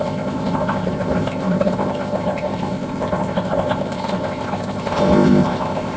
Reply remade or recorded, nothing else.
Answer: remade